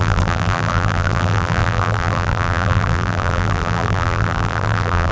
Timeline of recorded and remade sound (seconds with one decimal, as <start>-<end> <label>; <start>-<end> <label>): 0.0-5.1 remade